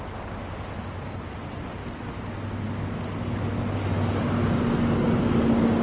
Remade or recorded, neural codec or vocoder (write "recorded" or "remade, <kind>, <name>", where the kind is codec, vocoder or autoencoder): recorded